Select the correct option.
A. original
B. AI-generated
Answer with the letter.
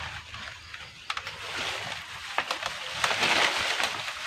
A